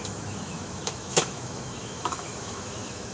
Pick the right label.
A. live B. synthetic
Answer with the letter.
B